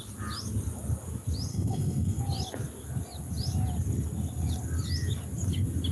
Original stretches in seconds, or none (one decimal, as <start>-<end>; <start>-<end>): 0.0-1.5; 2.2-5.9